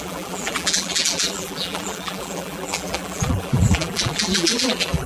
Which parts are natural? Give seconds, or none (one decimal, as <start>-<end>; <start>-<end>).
none